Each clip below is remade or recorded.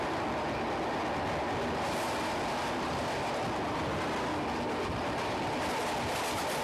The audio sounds recorded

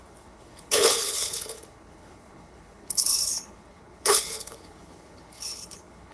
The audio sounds remade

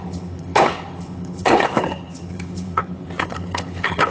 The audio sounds remade